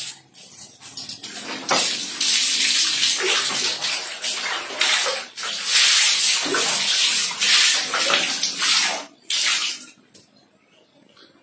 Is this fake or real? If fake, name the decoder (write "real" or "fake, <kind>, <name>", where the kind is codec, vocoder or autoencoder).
real